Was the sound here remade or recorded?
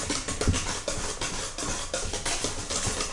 recorded